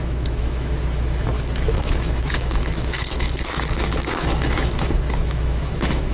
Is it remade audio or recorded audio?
remade